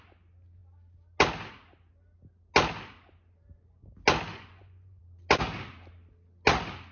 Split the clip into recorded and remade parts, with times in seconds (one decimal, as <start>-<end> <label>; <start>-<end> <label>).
0.0-4.3 recorded; 4.3-5.0 remade; 5.0-6.9 recorded